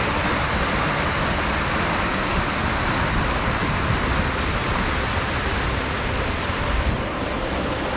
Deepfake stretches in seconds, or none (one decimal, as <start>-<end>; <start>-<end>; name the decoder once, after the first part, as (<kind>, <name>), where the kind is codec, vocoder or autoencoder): none